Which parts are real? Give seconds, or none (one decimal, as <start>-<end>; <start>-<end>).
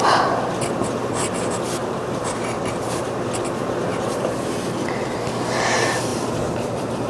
0.0-1.8; 2.7-3.9; 4.7-6.1